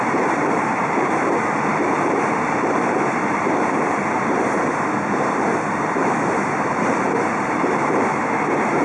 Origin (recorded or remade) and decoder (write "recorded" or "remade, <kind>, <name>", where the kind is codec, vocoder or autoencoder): remade, vocoder, BigVGAN v2